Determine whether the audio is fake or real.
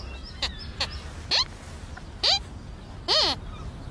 real